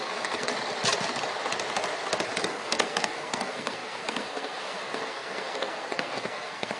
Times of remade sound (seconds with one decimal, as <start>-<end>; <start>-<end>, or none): 0.0-0.5; 2.5-6.8